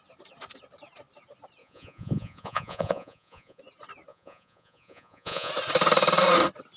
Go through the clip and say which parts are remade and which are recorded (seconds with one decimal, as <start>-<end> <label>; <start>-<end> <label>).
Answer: 0.0-1.6 recorded; 1.6-3.6 remade; 3.6-4.1 recorded; 4.1-5.5 remade; 5.5-6.8 recorded